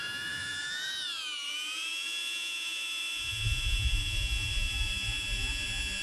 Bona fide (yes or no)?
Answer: no